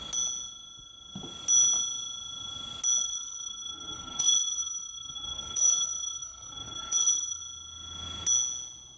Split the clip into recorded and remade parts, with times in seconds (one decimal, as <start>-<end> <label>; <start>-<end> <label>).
0.0-3.0 recorded; 3.0-7.4 remade; 7.4-9.0 recorded